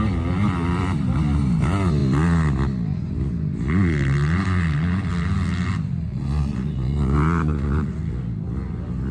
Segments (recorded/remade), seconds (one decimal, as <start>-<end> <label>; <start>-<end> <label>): 0.0-6.1 recorded; 6.1-8.0 remade; 8.0-9.1 recorded